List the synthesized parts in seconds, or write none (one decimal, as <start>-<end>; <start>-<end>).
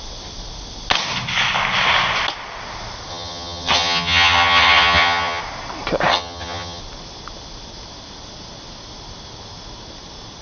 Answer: 3.1-5.4; 6.1-6.8